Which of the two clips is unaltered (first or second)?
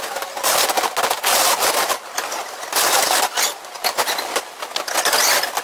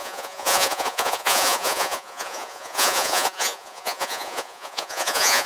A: first